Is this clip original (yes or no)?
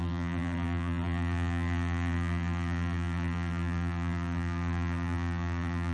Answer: no